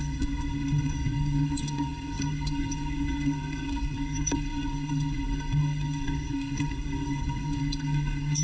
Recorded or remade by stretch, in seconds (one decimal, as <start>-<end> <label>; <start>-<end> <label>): 0.0-8.4 remade